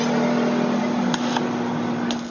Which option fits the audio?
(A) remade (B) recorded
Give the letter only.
B